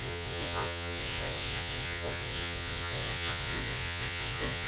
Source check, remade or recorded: remade